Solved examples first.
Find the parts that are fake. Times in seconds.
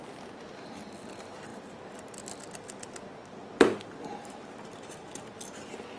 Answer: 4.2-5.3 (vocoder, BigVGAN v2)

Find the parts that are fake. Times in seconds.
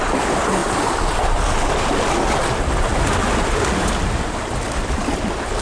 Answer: 2.9-3.7 (vocoder, BigVGAN v2)